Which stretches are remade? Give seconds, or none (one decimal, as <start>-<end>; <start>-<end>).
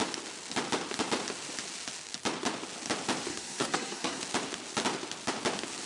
3.3-4.2